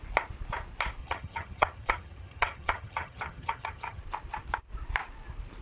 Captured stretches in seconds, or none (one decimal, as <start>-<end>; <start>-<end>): 0.0-1.0; 4.0-5.6